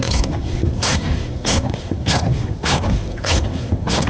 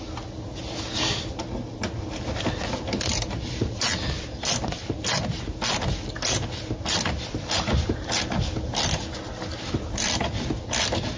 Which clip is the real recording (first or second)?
second